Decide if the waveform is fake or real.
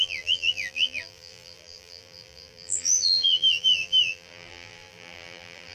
fake